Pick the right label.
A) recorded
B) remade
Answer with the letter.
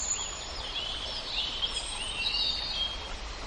B